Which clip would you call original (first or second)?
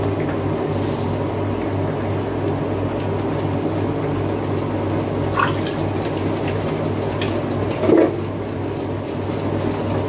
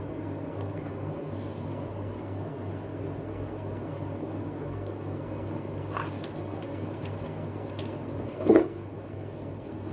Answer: first